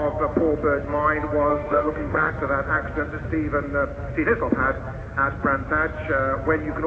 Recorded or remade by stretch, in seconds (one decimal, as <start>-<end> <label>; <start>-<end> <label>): 0.0-1.5 recorded; 1.5-2.3 remade; 2.3-6.9 recorded